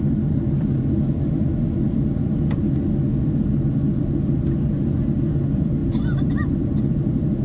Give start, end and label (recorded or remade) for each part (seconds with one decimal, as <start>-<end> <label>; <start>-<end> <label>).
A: 0.0-7.4 recorded